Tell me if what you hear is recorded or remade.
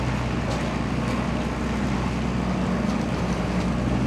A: recorded